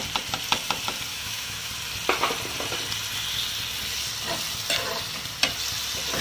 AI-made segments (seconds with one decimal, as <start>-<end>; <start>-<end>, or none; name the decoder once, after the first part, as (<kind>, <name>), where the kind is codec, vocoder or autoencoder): 1.1-1.7 (autoencoder, DAC-VAE)